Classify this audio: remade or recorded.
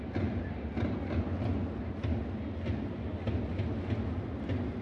recorded